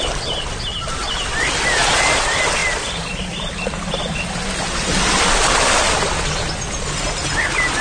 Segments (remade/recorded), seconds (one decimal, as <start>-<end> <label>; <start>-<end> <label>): 0.0-7.8 recorded